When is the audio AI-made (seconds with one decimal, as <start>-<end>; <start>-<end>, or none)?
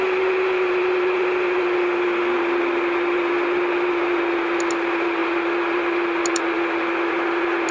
none